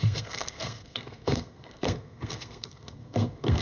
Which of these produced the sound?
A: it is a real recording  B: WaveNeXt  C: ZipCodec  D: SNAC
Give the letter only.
D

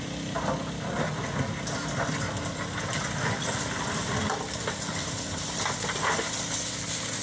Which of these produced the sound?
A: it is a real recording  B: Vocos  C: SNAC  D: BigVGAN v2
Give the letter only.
A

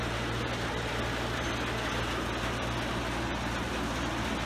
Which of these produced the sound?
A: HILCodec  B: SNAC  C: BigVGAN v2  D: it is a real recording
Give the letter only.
D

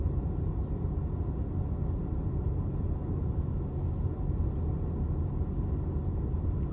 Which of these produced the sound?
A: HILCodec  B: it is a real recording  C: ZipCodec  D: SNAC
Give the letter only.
B